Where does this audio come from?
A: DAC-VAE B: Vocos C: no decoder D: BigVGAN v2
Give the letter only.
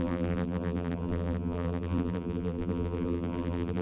D